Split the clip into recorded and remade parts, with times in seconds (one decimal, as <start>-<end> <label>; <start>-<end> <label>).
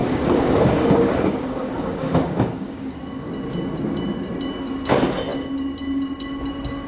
0.0-3.0 remade; 3.0-6.9 recorded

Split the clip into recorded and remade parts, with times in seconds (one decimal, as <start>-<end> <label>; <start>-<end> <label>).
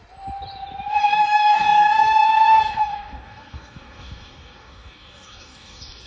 0.0-1.0 recorded; 1.0-6.1 remade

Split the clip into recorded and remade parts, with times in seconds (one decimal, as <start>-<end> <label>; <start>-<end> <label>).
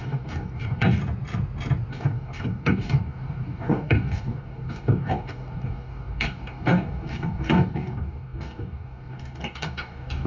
0.0-1.0 remade; 1.0-1.9 recorded; 1.9-10.3 remade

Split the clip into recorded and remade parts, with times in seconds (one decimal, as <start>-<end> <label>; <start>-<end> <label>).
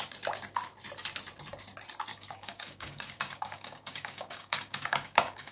0.0-2.1 recorded; 2.1-5.5 remade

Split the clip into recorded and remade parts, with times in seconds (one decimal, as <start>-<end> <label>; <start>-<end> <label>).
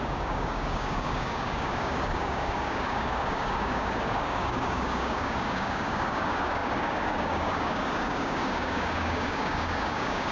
0.0-10.3 remade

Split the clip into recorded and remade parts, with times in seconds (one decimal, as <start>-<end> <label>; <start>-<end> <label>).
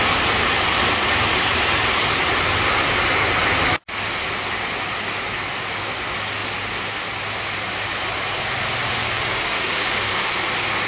0.0-9.0 recorded; 9.0-10.2 remade; 10.2-10.9 recorded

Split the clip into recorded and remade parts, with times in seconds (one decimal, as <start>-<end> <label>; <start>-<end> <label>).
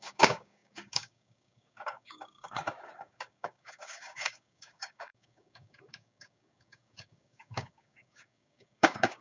0.0-9.2 remade